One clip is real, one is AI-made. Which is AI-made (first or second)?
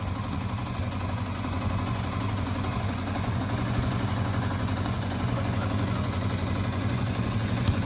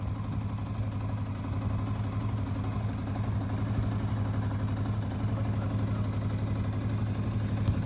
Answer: first